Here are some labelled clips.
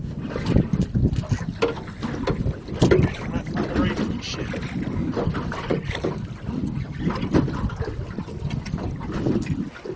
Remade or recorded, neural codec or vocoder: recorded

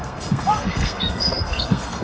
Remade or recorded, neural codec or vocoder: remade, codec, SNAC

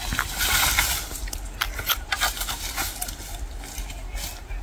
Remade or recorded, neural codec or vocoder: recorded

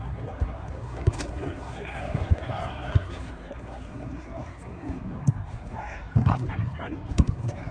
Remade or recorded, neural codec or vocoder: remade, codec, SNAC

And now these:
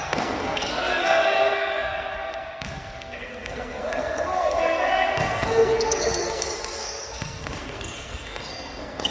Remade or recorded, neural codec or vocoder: remade, codec, SNAC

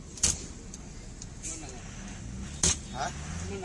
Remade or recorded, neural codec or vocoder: recorded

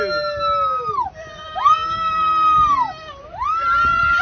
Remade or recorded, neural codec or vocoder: recorded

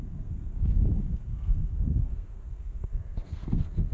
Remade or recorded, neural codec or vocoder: remade, codec, SNAC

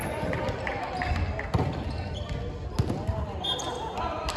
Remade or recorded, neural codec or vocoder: recorded